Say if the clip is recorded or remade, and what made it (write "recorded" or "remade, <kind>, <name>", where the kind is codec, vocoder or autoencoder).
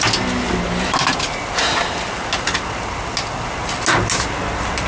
recorded